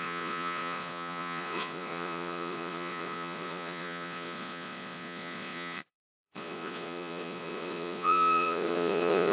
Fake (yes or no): yes